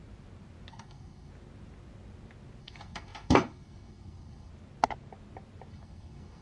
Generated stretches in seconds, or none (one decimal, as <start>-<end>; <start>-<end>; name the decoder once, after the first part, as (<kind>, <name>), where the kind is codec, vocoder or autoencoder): 0.7-1.3 (codec, SNAC); 2.6-4.5; 5.7-6.4

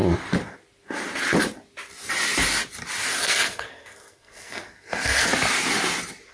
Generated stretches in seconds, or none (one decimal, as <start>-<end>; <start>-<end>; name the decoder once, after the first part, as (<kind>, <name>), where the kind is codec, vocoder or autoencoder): 3.2-5.3 (codec, SNAC)

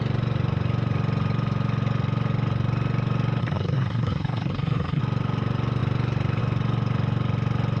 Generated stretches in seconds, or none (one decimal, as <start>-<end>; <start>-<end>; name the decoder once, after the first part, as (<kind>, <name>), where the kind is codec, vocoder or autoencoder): 3.4-5.0 (codec, SNAC)

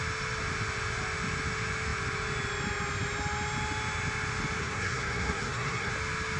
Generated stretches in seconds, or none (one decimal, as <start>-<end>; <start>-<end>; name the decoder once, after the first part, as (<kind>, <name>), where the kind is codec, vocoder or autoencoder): 4.6-5.9 (codec, SNAC)

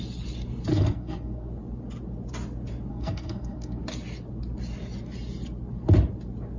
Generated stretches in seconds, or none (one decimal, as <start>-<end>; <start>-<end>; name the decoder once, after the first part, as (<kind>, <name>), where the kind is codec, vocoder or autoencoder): 0.7-1.5 (codec, SNAC); 2.9-3.8